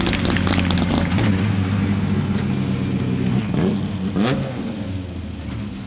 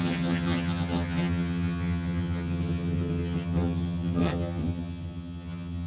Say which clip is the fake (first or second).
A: second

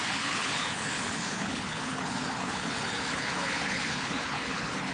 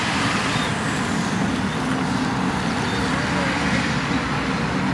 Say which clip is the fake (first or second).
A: first